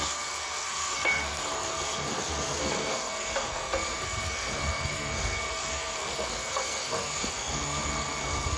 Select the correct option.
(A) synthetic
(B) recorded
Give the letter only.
A